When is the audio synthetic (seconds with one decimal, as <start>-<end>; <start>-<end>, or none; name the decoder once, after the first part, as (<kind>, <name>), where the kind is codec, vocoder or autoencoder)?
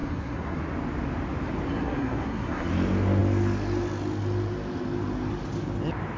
0.0-0.6 (codec, SNAC); 1.7-2.7